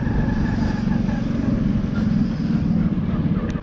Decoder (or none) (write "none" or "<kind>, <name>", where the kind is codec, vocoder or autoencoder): none